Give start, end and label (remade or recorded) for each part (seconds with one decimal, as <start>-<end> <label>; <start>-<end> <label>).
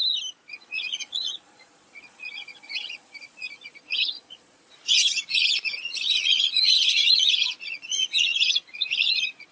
0.0-0.5 recorded; 0.5-9.5 remade